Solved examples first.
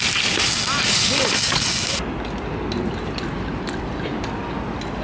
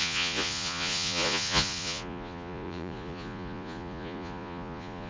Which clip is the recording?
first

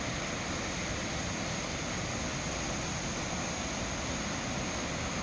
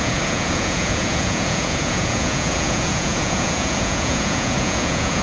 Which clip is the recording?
first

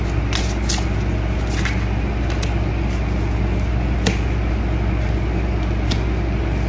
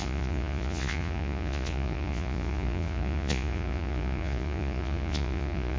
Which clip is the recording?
first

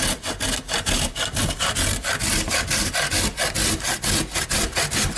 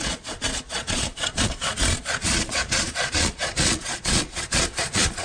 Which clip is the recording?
first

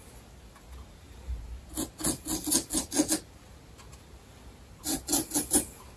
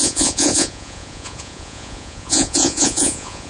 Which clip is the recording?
first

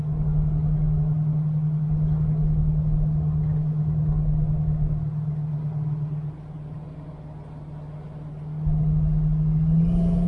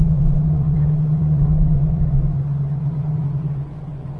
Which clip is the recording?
first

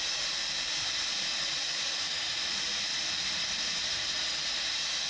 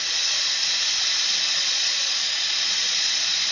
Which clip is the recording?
first